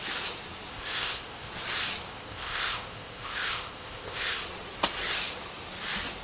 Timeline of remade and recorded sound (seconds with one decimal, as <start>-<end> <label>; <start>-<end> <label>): 0.0-0.7 recorded; 0.7-1.5 remade; 1.5-2.1 recorded; 2.1-4.4 remade; 4.4-6.2 recorded

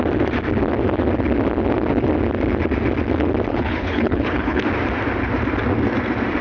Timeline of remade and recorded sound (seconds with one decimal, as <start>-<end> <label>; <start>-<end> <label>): 0.0-3.5 recorded; 3.5-4.6 remade; 4.6-6.4 recorded

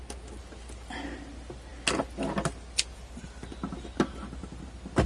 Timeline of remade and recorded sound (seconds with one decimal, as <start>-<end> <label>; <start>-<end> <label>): 0.0-5.1 recorded

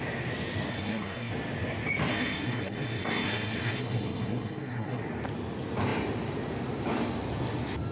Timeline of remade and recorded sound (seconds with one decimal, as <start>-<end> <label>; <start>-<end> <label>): 0.0-0.7 recorded; 0.7-1.3 remade; 1.3-2.1 recorded; 2.1-5.0 remade; 5.0-7.9 recorded

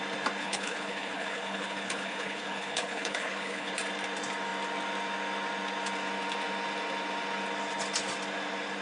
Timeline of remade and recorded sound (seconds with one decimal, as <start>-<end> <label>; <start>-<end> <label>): 0.0-0.4 recorded; 0.4-3.7 remade; 3.7-8.8 recorded

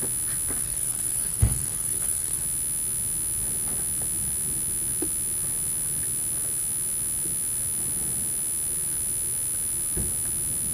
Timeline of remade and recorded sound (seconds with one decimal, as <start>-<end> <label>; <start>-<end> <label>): 0.0-0.6 recorded; 0.6-2.4 remade; 2.4-10.7 recorded

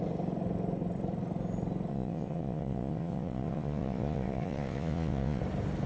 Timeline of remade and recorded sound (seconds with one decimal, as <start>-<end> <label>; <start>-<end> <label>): 0.0-1.9 recorded; 1.9-5.4 remade; 5.4-5.9 recorded